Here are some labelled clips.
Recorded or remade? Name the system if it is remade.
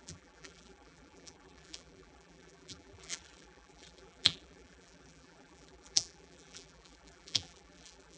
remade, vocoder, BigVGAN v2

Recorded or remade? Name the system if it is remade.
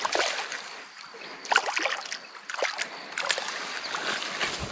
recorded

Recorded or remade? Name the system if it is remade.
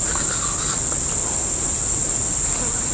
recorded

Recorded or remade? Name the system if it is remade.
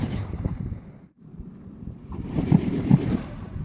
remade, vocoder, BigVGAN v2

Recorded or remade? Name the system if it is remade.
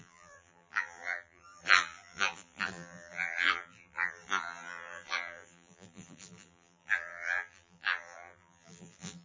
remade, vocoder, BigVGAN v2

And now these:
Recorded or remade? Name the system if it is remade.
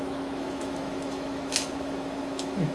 remade, autoencoder, DAC-VAE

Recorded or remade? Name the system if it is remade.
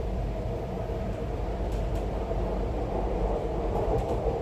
remade, vocoder, BigVGAN v2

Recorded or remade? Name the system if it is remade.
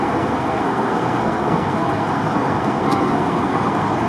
remade, codec, SNAC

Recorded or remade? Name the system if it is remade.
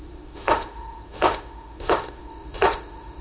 remade, autoencoder, DAC-VAE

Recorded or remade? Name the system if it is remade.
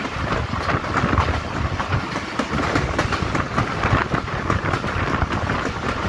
recorded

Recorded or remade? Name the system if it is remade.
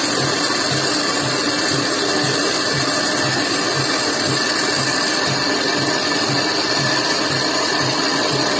recorded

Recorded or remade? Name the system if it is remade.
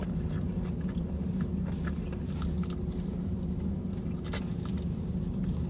recorded